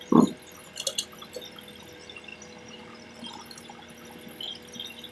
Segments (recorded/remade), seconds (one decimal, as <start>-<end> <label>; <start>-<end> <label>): 0.0-5.1 recorded